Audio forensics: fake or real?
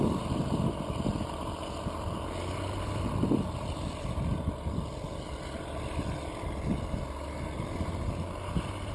real